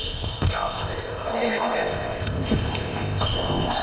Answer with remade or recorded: remade